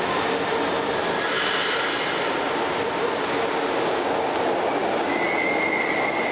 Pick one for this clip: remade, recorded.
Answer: recorded